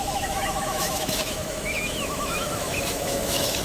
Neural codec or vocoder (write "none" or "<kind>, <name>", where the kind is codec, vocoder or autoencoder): autoencoder, DAC-VAE